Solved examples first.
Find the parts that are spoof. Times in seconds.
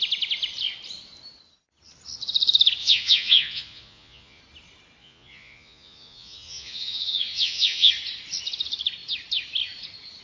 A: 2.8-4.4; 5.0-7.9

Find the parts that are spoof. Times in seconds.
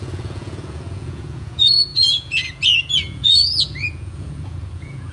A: 0.0-5.1